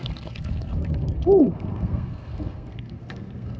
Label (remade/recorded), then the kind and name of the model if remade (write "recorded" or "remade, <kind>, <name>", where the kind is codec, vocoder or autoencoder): remade, codec, SNAC